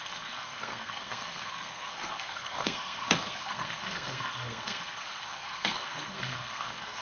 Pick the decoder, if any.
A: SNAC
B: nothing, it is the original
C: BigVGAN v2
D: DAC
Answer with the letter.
A